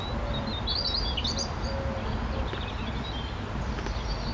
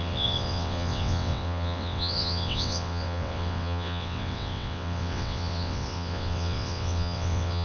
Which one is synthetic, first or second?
second